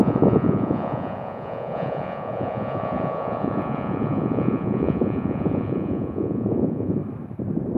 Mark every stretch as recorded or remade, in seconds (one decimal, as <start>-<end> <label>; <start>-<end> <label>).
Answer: 0.0-7.0 remade; 7.0-7.8 recorded